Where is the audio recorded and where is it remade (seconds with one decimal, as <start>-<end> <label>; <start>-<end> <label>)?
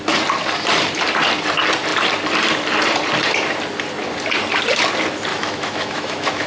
0.0-5.3 recorded; 5.3-6.5 remade